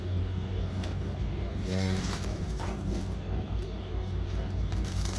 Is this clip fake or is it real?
fake